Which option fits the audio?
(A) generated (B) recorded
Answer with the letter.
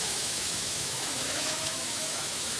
A